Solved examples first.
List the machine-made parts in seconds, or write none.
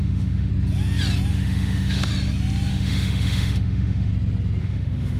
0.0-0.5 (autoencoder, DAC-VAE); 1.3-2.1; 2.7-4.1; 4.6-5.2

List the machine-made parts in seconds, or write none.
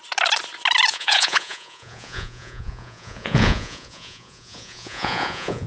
0.9-5.7 (vocoder, Vocos)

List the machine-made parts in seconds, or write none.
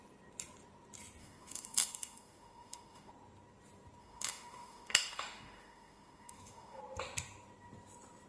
1.2-3.1 (autoencoder, DAC-VAE); 4.0-6.8